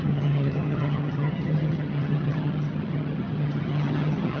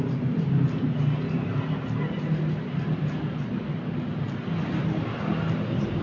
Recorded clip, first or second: second